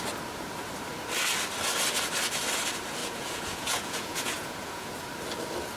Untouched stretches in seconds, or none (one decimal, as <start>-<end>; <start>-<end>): 0.0-3.0; 5.1-5.8